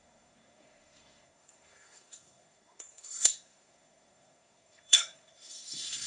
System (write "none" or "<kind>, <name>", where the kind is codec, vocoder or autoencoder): codec, SNAC